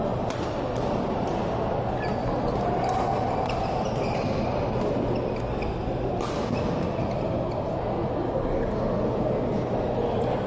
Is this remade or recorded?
recorded